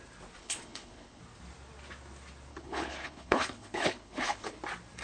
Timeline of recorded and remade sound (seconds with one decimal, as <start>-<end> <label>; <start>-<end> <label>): 0.0-0.4 recorded; 0.4-1.2 remade; 1.2-2.5 recorded; 2.5-4.6 remade; 4.6-5.0 recorded